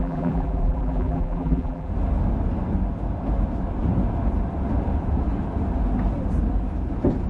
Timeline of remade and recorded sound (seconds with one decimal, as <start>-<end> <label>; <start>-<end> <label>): 0.0-1.9 remade; 1.9-7.3 recorded

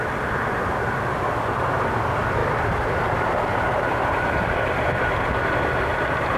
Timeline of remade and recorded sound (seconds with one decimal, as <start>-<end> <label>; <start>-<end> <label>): 0.0-2.4 recorded; 2.4-5.1 remade; 5.1-6.4 recorded